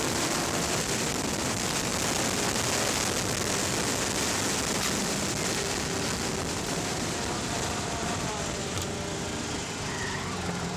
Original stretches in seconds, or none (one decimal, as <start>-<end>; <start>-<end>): 1.9-6.5